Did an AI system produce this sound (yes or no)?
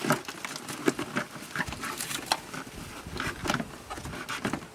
no